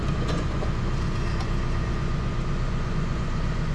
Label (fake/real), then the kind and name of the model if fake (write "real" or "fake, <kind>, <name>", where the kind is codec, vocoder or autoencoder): fake, vocoder, Vocos